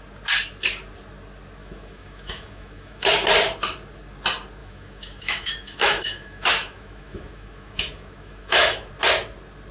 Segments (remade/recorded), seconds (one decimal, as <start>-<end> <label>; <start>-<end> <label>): 0.0-1.6 recorded; 1.6-3.1 remade; 3.1-4.6 recorded; 4.6-8.9 remade; 8.9-9.7 recorded